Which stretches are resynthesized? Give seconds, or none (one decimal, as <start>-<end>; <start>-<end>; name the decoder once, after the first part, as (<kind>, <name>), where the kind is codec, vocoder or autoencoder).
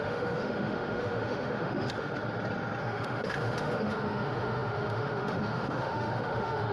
0.0-2.1 (autoencoder, DAC-VAE); 2.8-6.7